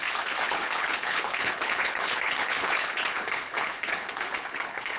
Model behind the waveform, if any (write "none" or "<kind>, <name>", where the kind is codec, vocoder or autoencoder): codec, HILCodec